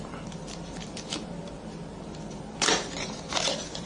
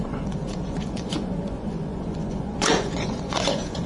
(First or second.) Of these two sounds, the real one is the first